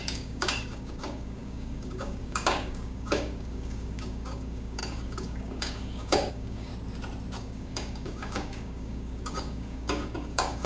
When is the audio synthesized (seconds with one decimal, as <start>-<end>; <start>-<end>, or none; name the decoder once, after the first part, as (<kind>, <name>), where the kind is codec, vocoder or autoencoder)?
0.0-6.7 (codec, DAC); 7.4-10.7